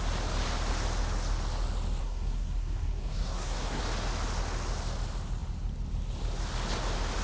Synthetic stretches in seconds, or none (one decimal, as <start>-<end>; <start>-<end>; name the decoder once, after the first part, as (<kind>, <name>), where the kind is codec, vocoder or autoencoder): 2.0-3.8 (codec, SNAC)